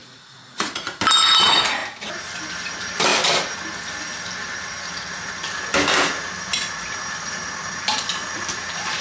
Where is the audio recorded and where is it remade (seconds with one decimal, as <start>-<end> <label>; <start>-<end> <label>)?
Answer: 0.0-1.0 remade; 1.0-9.0 recorded